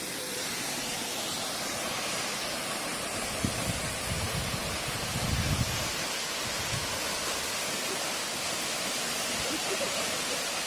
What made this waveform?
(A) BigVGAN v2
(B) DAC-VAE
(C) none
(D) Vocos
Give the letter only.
C